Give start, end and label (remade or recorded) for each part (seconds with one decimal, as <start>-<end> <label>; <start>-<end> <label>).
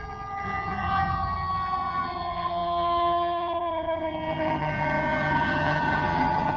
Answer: 0.0-6.6 remade